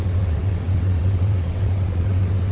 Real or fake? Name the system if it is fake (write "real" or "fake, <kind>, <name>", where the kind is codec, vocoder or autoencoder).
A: fake, vocoder, WaveNeXt